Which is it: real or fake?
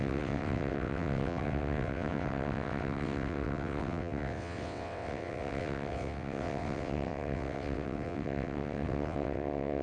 fake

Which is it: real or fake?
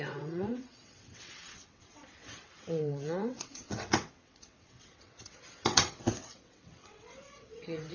fake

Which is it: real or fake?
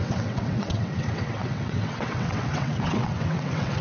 fake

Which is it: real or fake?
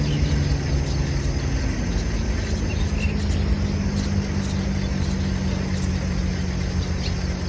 real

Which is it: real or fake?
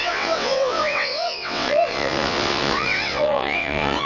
fake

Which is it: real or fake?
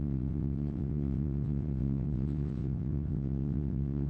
fake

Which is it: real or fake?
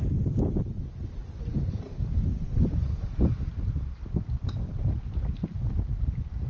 real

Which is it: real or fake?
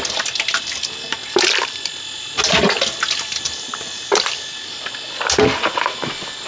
real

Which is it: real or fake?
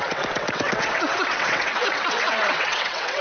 fake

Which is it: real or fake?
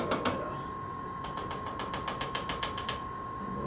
real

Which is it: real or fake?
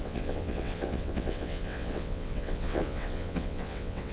fake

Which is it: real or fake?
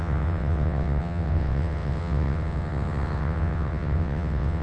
fake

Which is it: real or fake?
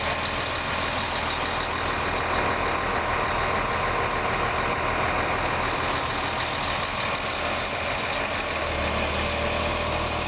real